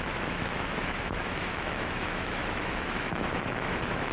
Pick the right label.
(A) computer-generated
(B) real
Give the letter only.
A